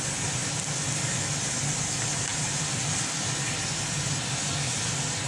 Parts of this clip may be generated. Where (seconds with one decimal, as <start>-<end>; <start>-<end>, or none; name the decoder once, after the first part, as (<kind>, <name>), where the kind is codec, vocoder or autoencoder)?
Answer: none